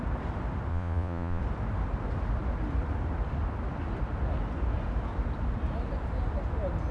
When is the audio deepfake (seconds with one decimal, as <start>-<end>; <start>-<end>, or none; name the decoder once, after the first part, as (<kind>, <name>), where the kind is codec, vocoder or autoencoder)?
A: 0.7-1.4 (vocoder, Vocos)